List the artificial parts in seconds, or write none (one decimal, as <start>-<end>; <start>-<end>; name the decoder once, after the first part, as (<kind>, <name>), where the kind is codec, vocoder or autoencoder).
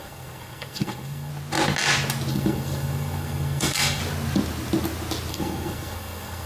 0.0-1.3 (codec, SNAC); 2.3-4.0; 5.3-6.5